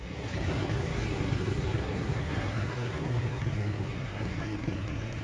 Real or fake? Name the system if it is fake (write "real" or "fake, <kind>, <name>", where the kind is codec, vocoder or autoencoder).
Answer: fake, codec, SNAC